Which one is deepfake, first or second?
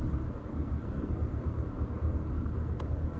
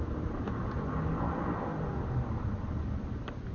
first